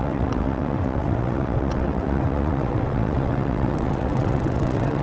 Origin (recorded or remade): remade